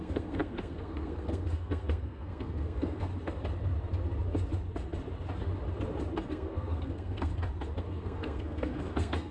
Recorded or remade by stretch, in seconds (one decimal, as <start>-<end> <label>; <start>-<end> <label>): 0.0-3.1 remade; 3.1-6.3 recorded; 6.3-7.3 remade; 7.3-7.8 recorded; 7.8-9.3 remade